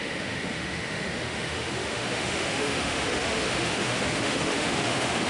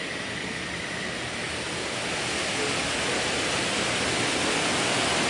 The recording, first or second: second